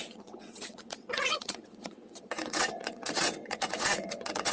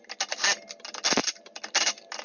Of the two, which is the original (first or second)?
second